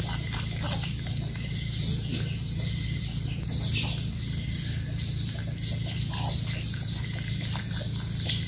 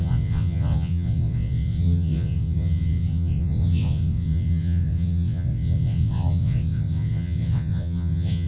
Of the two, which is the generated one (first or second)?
second